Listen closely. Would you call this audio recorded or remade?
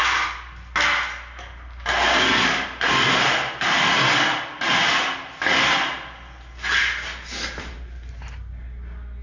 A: recorded